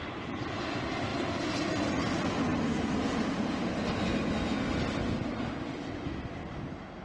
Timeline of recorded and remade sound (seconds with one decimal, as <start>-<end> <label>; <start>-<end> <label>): 0.0-3.1 recorded; 3.1-3.8 remade; 3.8-6.4 recorded; 6.4-7.0 remade